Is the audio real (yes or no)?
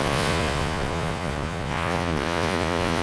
no